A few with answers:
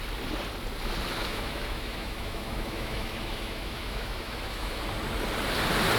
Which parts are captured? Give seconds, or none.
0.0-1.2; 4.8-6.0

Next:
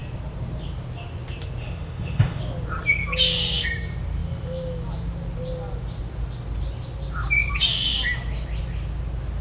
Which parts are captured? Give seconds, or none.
0.0-1.6; 2.4-9.4

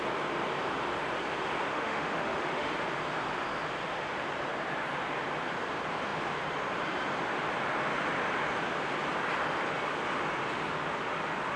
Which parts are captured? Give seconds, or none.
0.0-1.7; 2.7-11.6

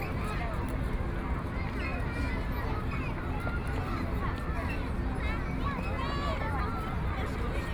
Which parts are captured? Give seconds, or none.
0.0-7.7

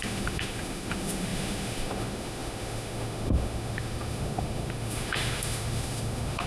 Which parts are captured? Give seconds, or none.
none

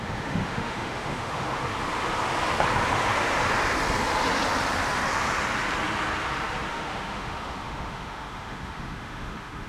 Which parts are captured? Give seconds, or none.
1.6-6.7